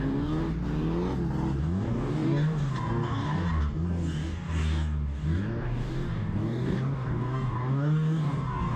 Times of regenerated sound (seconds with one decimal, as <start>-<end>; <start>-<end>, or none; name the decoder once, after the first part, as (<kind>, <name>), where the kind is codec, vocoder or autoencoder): 0.0-0.5 (codec, DAC); 1.6-8.8